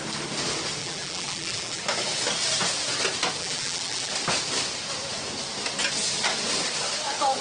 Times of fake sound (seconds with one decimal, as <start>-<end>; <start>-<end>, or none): 0.8-1.8; 3.4-4.1